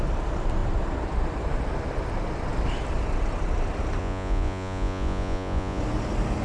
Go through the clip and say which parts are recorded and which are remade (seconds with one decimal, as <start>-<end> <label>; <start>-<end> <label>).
0.0-4.0 recorded; 4.0-5.8 remade; 5.8-6.4 recorded